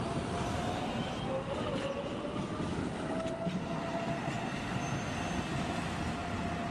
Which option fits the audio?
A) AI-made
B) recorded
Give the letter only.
B